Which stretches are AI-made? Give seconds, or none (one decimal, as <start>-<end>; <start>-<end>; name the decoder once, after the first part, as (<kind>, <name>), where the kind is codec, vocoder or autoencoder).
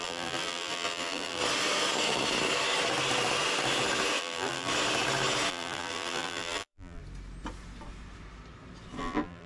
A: 0.0-1.4 (vocoder, BigVGAN v2); 4.2-4.7; 5.5-7.0; 9.0-9.5